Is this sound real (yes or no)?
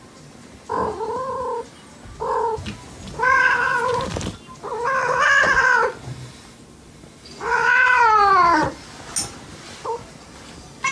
yes